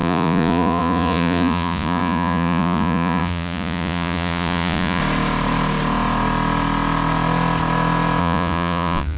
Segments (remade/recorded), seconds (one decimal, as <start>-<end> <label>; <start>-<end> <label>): 0.0-5.0 remade; 5.0-8.2 recorded; 8.2-9.2 remade